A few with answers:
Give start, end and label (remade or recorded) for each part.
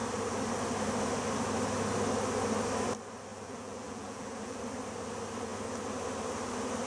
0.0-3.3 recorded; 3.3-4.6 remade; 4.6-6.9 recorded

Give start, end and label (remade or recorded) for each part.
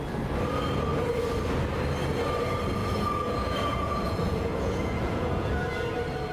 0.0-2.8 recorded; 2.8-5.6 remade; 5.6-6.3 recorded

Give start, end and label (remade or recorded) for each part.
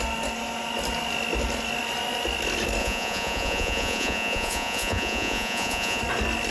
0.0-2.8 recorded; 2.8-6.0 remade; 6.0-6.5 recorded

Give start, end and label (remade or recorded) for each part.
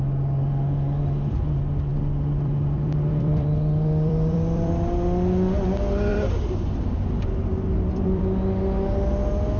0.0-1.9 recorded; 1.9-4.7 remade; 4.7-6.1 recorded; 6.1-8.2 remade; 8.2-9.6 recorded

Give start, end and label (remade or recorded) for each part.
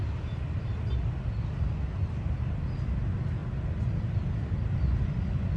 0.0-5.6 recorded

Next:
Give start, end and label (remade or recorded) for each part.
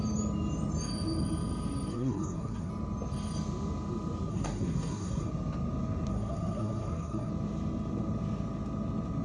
0.0-1.9 recorded; 1.9-2.7 remade; 2.7-4.3 recorded; 4.3-5.3 remade; 5.3-6.1 recorded; 6.1-7.3 remade; 7.3-9.2 recorded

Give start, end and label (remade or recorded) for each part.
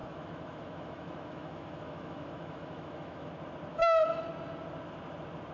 0.0-3.3 remade; 3.3-3.7 recorded; 3.7-4.2 remade; 4.2-5.5 recorded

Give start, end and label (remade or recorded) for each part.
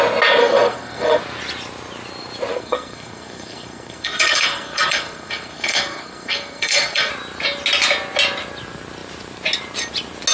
0.0-0.4 recorded; 0.4-1.2 remade; 1.2-2.5 recorded; 2.5-7.1 remade; 7.1-10.3 recorded